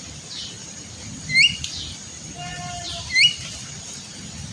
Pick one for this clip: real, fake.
fake